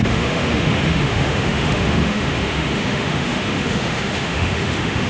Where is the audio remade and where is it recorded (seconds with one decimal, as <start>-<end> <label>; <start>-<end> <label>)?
0.0-5.1 remade